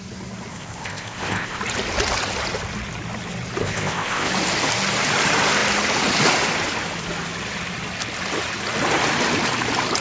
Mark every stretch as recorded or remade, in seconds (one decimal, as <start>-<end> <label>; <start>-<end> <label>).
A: 0.0-0.5 recorded; 0.5-1.6 remade; 1.6-3.6 recorded; 3.6-4.3 remade; 4.3-10.0 recorded